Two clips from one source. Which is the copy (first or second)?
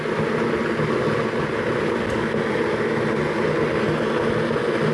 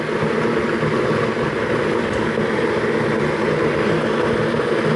second